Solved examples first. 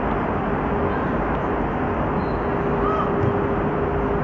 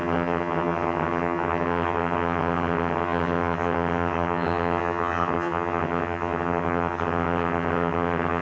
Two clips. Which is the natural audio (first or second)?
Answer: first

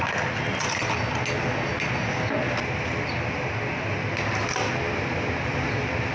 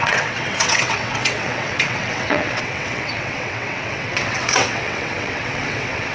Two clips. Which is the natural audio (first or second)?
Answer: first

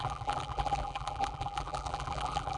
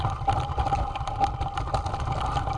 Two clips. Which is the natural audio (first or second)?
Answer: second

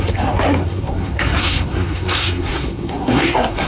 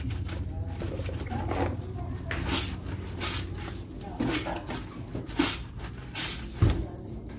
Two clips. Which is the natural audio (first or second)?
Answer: second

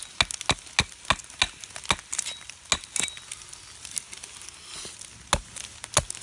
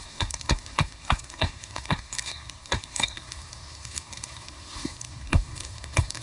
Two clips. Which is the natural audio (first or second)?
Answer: first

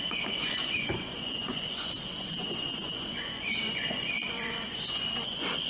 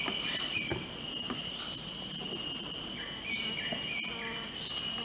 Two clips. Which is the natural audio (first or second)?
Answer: second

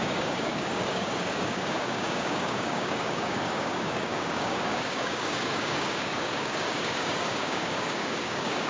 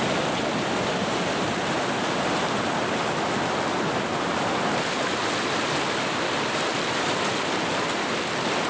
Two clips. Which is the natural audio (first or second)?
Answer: second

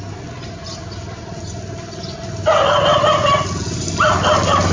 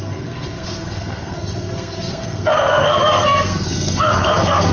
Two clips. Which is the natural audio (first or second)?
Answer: first